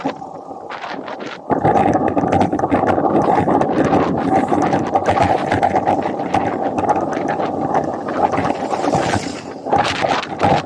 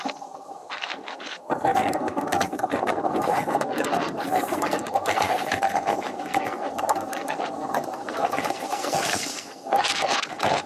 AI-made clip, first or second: second